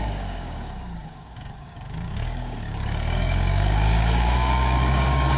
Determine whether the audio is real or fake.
fake